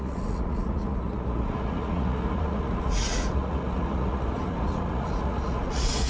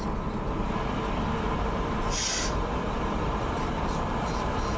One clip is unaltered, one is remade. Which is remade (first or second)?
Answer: first